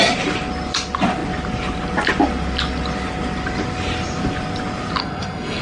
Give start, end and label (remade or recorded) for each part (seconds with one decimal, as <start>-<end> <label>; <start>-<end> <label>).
0.0-5.0 recorded; 5.0-5.6 remade